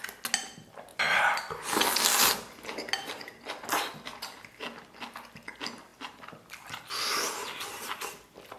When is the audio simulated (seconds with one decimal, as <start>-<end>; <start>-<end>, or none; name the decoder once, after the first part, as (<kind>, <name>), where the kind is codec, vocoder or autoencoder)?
0.9-1.6 (vocoder, BigVGAN v2); 5.9-8.6

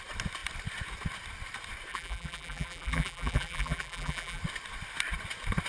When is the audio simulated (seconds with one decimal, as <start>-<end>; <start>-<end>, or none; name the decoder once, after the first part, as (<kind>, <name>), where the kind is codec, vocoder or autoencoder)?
1.9-4.4 (vocoder, BigVGAN v2)

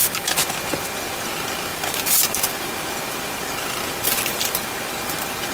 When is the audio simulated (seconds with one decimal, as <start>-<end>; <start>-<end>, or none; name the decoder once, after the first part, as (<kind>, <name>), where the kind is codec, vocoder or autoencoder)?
none

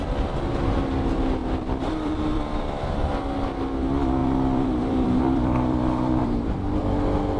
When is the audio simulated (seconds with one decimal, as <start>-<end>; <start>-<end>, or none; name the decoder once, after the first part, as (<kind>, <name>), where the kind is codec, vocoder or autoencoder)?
1.4-3.1 (vocoder, BigVGAN v2); 4.2-6.5